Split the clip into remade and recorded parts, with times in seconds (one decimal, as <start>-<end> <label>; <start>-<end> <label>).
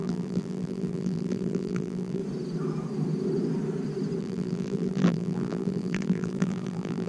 0.0-2.2 remade; 2.2-4.2 recorded; 4.2-7.1 remade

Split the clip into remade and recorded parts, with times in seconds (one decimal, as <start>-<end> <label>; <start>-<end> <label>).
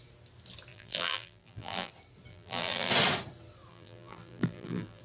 0.0-0.7 recorded; 0.7-1.9 remade; 1.9-2.3 recorded; 2.3-2.9 remade; 2.9-3.7 recorded; 3.7-5.0 remade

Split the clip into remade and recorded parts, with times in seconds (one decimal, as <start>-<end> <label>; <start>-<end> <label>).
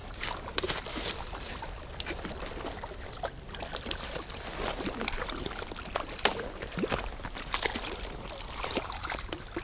0.0-5.4 remade; 5.4-8.7 recorded; 8.7-9.6 remade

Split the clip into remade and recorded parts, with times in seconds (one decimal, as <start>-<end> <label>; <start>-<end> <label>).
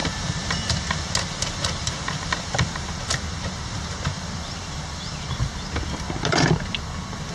0.0-0.8 remade; 0.8-4.1 recorded; 4.1-6.6 remade; 6.6-7.3 recorded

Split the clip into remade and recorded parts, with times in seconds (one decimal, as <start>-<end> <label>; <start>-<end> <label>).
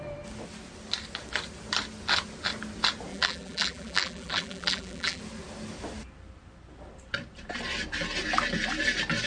0.0-3.1 recorded; 3.1-5.2 remade; 5.2-9.3 recorded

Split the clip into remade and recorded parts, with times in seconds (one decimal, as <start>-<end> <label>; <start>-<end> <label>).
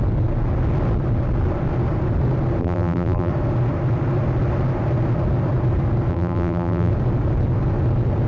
0.0-2.6 recorded; 2.6-3.3 remade; 3.3-6.1 recorded; 6.1-6.9 remade; 6.9-8.3 recorded